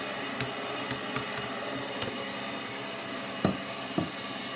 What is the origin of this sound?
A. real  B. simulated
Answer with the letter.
A